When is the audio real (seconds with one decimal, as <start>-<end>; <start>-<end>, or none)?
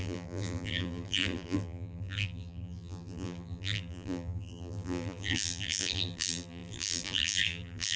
none